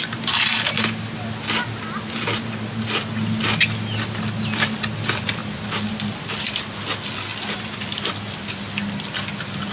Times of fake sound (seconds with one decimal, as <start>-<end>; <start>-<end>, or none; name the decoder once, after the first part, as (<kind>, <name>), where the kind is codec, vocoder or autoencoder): none